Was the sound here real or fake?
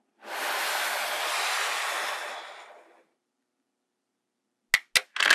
real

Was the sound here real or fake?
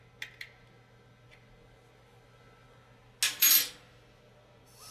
real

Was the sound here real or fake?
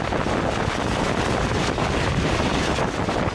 real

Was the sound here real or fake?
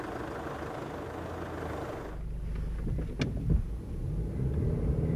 real